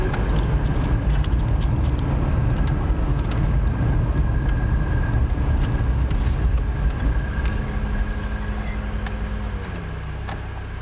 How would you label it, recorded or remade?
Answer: recorded